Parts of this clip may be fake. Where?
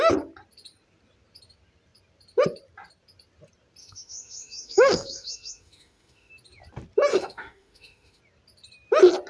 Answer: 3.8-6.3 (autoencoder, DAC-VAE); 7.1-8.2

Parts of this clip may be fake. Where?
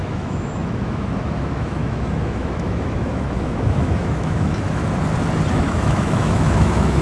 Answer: 0.0-4.8 (autoencoder, DAC-VAE); 5.5-7.0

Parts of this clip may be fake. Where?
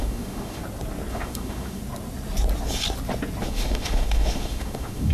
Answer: 0.0-0.6 (autoencoder, DAC-VAE); 1.1-1.8; 3.4-5.1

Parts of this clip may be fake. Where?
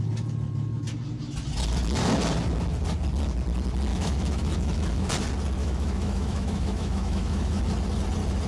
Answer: 3.9-5.1 (autoencoder, DAC-VAE); 5.6-7.6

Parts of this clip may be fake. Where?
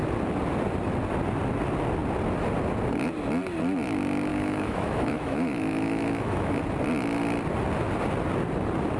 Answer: 4.3-6.6 (autoencoder, DAC-VAE)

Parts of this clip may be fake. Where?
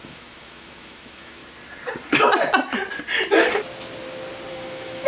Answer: 0.0-1.4 (autoencoder, DAC-VAE); 4.5-5.1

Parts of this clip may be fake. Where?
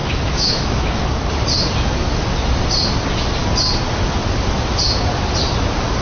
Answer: 0.0-1.2 (autoencoder, DAC-VAE)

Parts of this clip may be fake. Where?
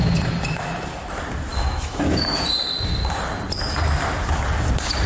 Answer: 1.5-2.4 (autoencoder, DAC-VAE)